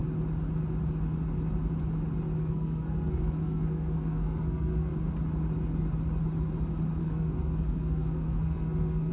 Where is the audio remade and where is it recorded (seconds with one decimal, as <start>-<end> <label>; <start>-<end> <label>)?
0.0-2.4 recorded; 2.4-4.9 remade; 4.9-7.0 recorded; 7.0-9.1 remade